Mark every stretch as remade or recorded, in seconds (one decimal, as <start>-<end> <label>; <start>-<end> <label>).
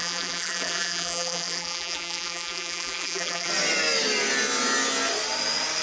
0.0-3.5 remade; 3.5-5.8 recorded